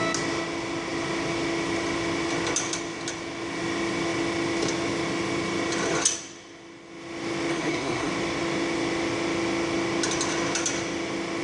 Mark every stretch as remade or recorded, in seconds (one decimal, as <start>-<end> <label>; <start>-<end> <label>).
0.0-7.5 recorded; 7.5-8.1 remade; 8.1-11.4 recorded